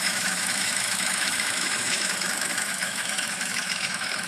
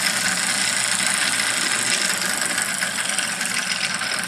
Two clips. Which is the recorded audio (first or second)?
second